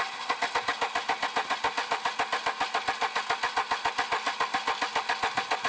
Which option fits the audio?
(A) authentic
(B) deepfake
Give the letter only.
A